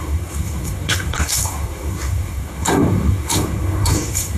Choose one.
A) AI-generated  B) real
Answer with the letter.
A